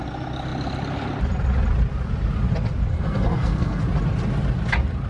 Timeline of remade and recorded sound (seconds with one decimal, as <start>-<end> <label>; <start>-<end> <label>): 0.0-2.9 recorded; 2.9-3.8 remade; 3.8-5.1 recorded